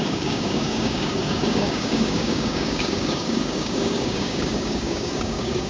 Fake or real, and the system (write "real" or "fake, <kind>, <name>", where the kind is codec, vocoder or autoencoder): fake, codec, DAC